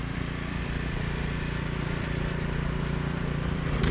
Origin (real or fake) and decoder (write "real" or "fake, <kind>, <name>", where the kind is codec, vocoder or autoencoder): fake, vocoder, BigVGAN v2